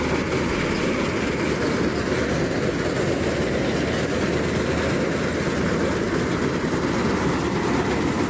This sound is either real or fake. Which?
real